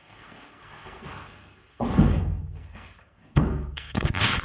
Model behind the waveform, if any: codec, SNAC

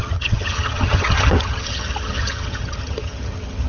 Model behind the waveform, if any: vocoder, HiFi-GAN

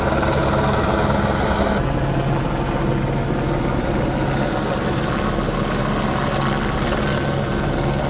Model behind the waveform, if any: none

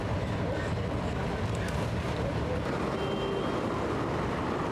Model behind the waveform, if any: none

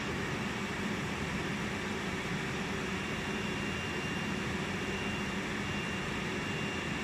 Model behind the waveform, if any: none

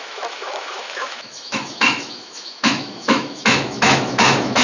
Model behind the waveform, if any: autoencoder, DAC-VAE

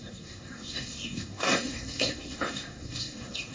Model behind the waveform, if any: codec, SNAC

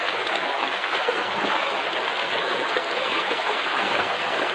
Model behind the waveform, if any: codec, SNAC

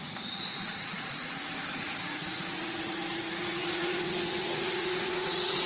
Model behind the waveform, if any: vocoder, Vocos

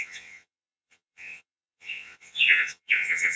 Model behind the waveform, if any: vocoder, WaveNeXt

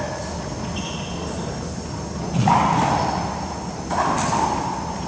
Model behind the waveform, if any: none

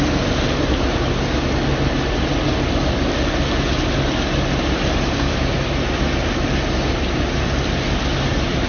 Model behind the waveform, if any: none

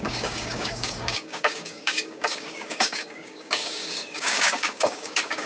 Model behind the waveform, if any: codec, DAC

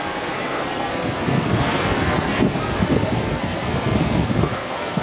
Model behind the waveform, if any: codec, SNAC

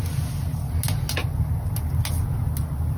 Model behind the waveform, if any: none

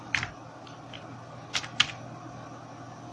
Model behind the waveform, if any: none